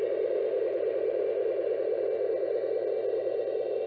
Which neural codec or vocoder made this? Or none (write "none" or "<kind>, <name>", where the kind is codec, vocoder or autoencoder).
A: none